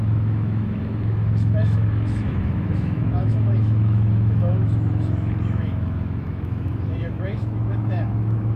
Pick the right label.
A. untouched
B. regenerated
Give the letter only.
B